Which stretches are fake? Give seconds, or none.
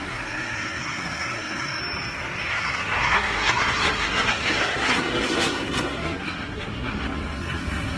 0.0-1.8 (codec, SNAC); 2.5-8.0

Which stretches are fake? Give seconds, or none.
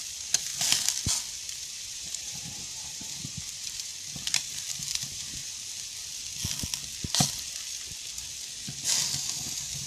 0.0-0.5 (vocoder, BigVGAN v2); 1.3-3.9; 4.7-5.4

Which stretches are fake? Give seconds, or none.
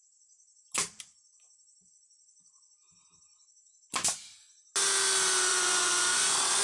5.5-6.6 (vocoder, Vocos)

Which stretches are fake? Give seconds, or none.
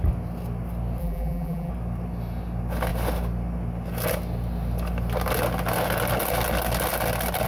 1.0-1.7 (vocoder, BigVGAN v2)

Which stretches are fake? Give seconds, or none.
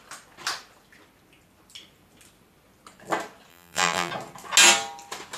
3.5-4.1 (vocoder, BigVGAN v2)